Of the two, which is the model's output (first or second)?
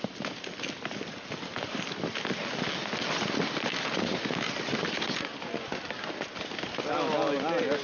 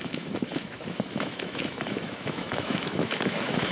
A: second